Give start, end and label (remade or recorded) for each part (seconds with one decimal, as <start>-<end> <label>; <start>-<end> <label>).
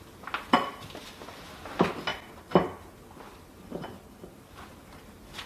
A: 0.0-5.5 recorded